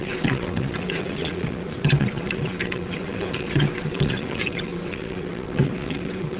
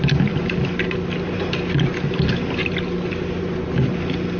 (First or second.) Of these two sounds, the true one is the second